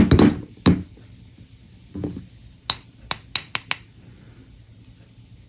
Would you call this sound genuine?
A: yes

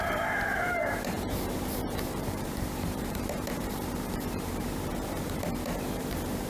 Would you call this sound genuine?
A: no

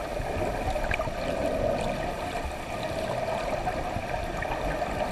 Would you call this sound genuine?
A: yes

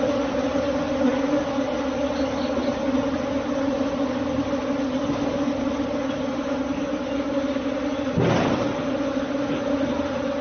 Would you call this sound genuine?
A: yes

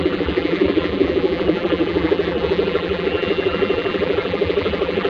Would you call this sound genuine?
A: no